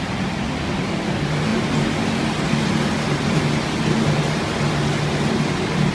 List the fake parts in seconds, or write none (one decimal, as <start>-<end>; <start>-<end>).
none